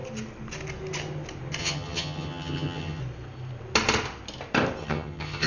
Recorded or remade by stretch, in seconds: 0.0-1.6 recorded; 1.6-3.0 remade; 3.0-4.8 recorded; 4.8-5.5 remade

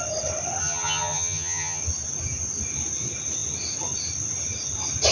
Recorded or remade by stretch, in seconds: 0.0-0.6 recorded; 0.6-1.8 remade; 1.8-5.1 recorded

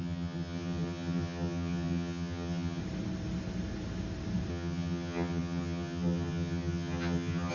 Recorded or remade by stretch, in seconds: 0.0-2.8 remade; 2.8-4.5 recorded; 4.5-7.5 remade

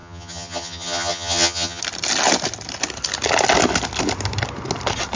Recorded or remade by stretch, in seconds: 0.0-1.8 remade; 1.8-5.2 recorded